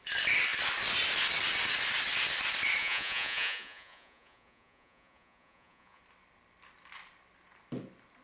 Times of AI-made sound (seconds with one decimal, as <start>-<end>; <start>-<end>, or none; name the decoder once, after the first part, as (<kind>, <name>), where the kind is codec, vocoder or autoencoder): 2.8-6.0 (vocoder, Vocos)